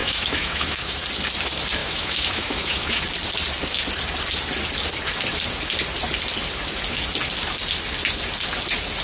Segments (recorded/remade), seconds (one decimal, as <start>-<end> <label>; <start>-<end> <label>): 0.0-1.0 remade; 1.0-1.8 recorded; 1.8-3.0 remade; 3.0-9.0 recorded